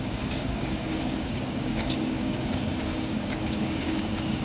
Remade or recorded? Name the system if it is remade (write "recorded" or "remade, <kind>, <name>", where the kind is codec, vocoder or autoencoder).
remade, codec, DAC